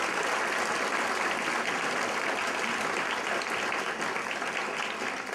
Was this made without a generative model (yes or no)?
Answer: yes